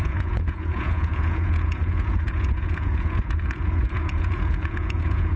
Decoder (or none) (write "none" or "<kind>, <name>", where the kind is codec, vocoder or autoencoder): vocoder, Vocos